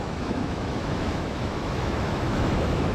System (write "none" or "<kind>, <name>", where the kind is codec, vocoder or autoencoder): autoencoder, DAC-VAE